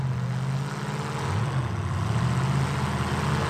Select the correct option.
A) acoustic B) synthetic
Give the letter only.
A